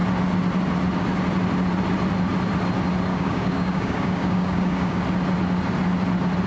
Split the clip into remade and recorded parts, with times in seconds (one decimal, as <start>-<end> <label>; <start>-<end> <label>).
0.0-3.1 recorded; 3.1-5.0 remade; 5.0-6.5 recorded